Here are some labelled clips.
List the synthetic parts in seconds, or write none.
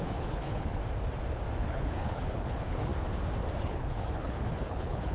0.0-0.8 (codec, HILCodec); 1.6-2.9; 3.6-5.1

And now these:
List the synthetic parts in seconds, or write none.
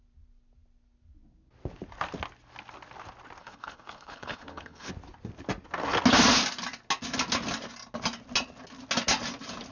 3.4-4.9 (codec, HILCodec)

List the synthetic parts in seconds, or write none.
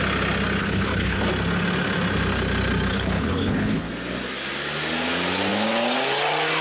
0.6-1.2 (codec, HILCodec); 2.9-3.9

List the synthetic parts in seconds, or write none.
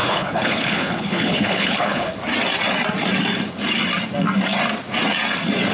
0.0-2.1 (codec, HILCodec)